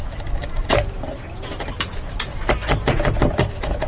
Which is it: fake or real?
real